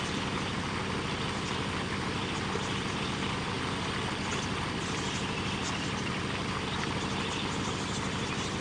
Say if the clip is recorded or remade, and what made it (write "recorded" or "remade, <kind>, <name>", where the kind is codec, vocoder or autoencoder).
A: recorded